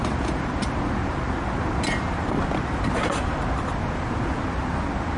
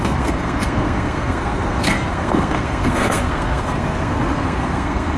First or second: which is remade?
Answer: second